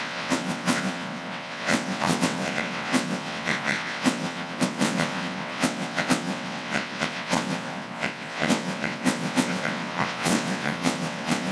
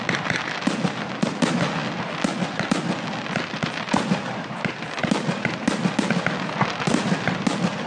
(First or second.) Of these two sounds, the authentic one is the second